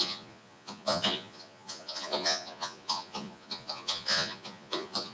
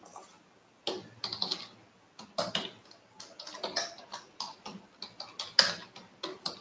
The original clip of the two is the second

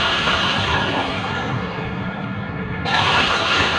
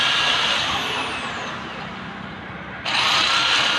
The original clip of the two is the second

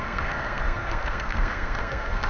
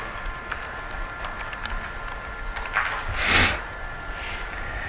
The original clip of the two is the second